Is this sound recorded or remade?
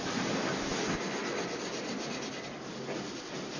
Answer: recorded